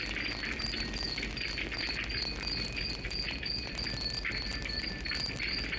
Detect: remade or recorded recorded